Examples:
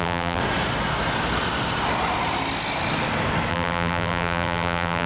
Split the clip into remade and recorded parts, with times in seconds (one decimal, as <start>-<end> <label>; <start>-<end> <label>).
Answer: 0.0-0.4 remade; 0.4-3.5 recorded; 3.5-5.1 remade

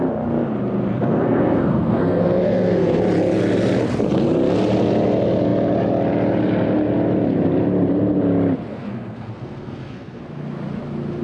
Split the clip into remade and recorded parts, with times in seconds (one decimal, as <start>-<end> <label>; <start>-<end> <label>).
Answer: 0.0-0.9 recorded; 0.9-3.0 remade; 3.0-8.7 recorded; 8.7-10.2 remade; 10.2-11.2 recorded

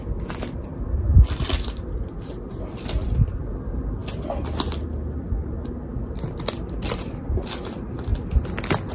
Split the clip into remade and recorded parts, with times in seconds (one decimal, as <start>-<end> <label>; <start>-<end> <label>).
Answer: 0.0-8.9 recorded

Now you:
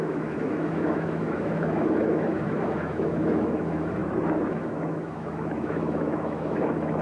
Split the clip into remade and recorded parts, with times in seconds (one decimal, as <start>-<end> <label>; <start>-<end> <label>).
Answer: 0.0-4.0 remade; 4.0-4.5 recorded; 4.5-7.0 remade

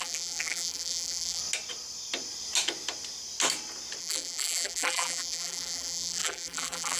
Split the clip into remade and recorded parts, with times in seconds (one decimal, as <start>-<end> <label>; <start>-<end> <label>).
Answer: 0.0-1.4 remade; 1.4-4.0 recorded; 4.0-7.0 remade